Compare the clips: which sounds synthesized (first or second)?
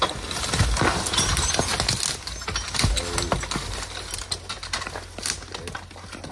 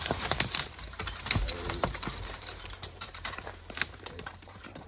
second